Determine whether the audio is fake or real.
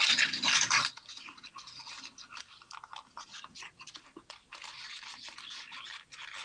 real